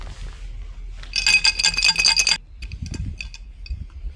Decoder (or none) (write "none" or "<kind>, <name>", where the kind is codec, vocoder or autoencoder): none